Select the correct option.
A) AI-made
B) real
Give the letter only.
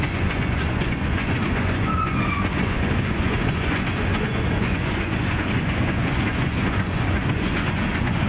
A